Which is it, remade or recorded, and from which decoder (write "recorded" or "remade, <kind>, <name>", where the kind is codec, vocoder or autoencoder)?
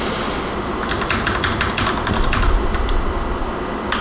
recorded